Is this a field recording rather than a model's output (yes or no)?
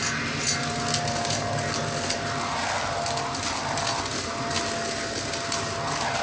yes